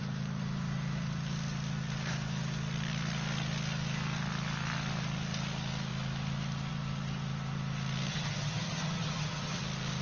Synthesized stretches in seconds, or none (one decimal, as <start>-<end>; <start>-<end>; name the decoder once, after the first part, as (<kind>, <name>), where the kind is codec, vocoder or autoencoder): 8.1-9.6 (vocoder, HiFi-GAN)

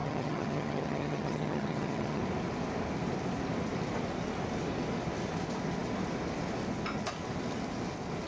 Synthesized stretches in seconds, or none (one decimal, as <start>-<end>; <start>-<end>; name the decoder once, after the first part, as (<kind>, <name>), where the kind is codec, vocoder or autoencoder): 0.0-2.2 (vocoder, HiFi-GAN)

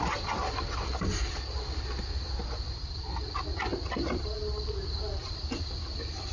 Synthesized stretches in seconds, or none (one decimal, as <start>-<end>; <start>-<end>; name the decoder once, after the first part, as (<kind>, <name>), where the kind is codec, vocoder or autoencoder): none